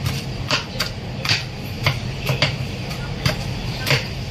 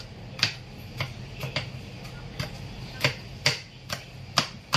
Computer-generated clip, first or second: first